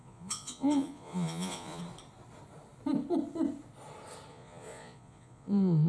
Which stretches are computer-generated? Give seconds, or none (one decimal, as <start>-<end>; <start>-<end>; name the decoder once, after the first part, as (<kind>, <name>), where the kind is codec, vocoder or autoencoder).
0.0-1.8 (vocoder, Vocos); 4.3-5.9